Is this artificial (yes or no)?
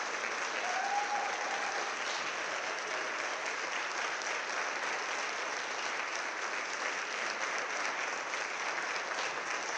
no